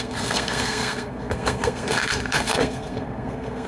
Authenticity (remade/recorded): remade